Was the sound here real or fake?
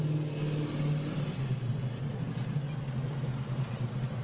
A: real